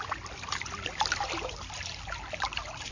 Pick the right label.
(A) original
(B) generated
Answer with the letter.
B